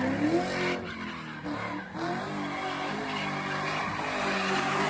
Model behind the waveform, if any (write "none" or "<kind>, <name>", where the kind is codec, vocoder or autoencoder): none